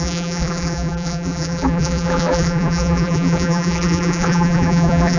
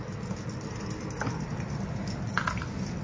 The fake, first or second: first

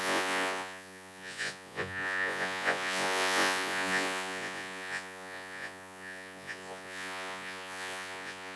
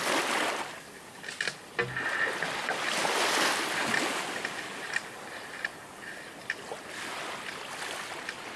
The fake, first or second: first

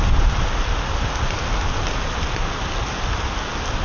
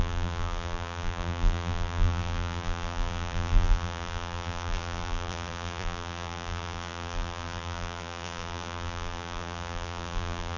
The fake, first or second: second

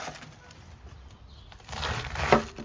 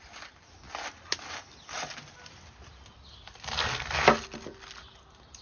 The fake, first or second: first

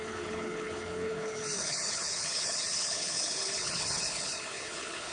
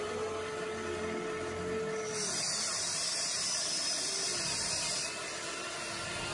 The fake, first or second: first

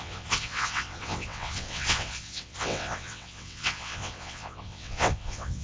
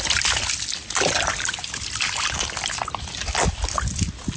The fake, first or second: first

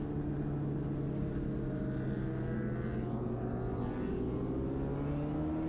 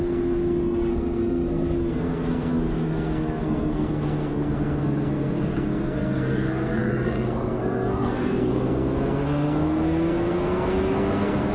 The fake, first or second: second